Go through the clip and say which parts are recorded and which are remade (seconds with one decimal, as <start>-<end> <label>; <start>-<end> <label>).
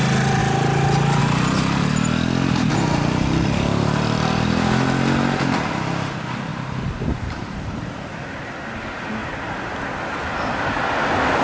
0.0-6.5 recorded; 6.5-8.1 remade; 8.1-9.2 recorded; 9.2-9.8 remade; 9.8-11.4 recorded